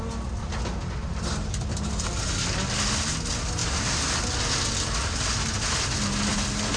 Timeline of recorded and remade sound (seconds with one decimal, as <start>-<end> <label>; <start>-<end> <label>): 0.0-3.6 recorded; 3.6-4.1 remade; 4.1-6.8 recorded